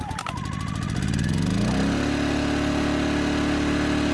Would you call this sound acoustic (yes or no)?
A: yes